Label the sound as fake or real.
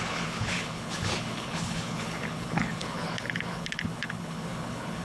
fake